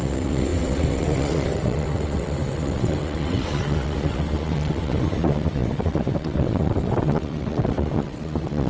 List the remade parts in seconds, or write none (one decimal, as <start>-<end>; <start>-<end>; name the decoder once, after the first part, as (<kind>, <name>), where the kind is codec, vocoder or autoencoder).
0.0-8.7 (vocoder, WaveNeXt)